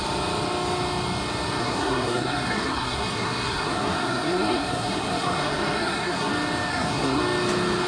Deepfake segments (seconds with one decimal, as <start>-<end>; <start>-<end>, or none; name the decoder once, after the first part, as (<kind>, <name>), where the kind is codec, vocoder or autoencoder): 1.6-6.3 (codec, SNAC); 6.7-7.2